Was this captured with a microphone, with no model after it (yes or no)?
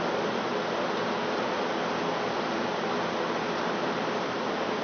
yes